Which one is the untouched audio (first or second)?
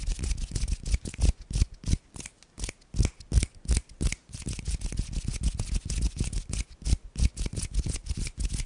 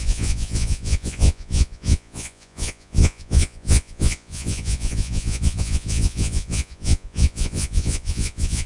first